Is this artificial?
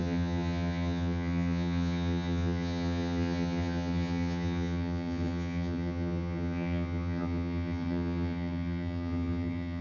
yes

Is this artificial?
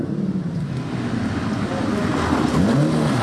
no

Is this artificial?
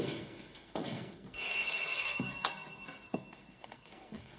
yes